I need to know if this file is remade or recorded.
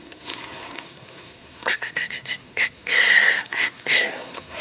remade